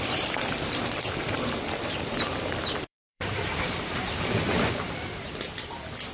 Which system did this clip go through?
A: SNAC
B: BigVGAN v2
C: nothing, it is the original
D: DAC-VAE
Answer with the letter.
B